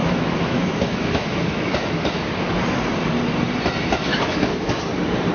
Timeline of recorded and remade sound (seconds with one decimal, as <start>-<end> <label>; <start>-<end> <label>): 0.0-2.6 remade; 2.6-4.1 recorded; 4.1-4.8 remade; 4.8-5.3 recorded